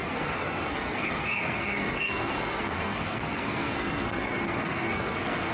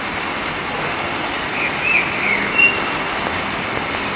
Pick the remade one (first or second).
first